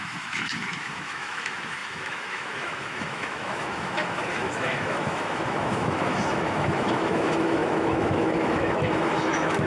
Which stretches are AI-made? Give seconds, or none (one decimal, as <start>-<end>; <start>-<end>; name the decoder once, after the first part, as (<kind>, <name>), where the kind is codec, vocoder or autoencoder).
0.0-9.7 (autoencoder, DAC-VAE)